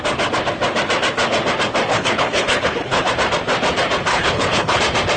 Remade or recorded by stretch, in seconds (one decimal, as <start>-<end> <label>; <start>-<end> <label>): 0.0-1.9 recorded; 1.9-3.1 remade; 3.1-4.1 recorded; 4.1-4.8 remade; 4.8-5.2 recorded